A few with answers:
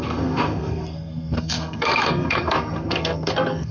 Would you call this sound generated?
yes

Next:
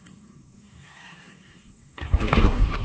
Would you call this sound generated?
yes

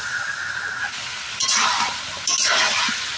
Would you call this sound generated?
no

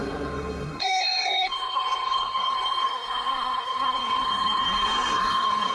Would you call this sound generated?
yes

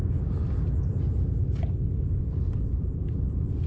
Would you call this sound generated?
no